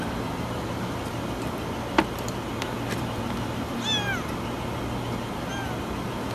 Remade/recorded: recorded